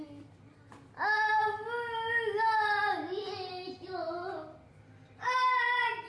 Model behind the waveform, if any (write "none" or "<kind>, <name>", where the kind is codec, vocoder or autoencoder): none